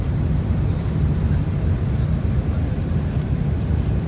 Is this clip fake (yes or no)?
no